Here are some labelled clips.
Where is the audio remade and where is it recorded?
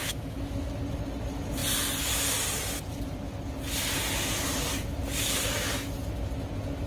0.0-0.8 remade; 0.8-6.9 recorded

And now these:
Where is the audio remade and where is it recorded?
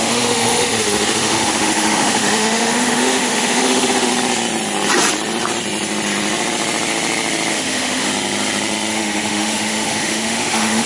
0.0-4.1 remade; 4.1-7.5 recorded; 7.5-8.1 remade; 8.1-8.9 recorded; 8.9-10.9 remade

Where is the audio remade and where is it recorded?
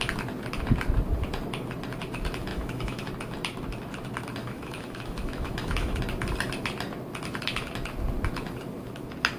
0.0-2.5 recorded; 2.5-3.1 remade; 3.1-4.4 recorded; 4.4-6.0 remade; 6.0-9.4 recorded